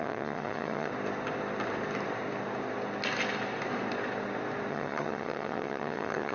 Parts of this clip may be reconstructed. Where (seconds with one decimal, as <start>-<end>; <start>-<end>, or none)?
0.0-0.9; 4.7-6.3

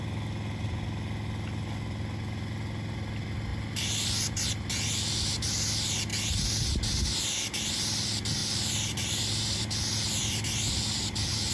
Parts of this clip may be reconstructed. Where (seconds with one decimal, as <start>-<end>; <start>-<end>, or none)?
none

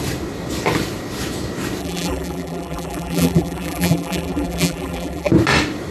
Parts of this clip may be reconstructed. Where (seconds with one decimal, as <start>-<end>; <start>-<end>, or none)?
1.8-5.3

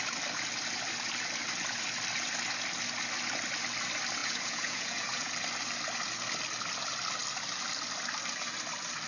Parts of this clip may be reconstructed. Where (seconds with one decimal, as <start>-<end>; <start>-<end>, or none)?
4.2-5.3

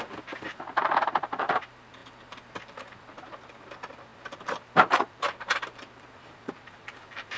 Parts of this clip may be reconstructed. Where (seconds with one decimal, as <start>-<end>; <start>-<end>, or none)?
0.0-7.4

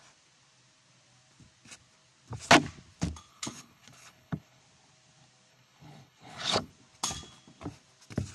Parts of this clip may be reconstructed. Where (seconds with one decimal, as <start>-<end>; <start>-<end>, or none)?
3.3-4.6; 5.5-6.7

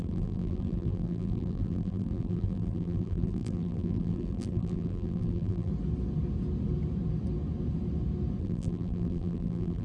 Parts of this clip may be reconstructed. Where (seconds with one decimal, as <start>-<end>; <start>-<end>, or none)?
0.0-5.7; 8.4-9.8